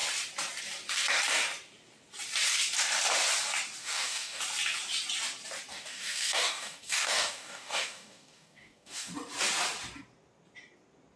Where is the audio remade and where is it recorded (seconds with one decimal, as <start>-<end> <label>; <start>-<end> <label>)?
0.0-3.8 recorded; 3.8-4.4 remade; 4.4-5.7 recorded; 5.7-9.1 remade; 9.1-11.2 recorded